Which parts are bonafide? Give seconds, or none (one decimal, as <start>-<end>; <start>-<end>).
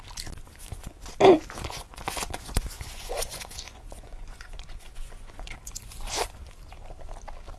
0.0-1.4; 6.0-7.6